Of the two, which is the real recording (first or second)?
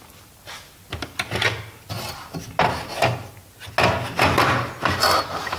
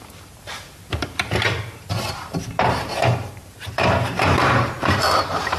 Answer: first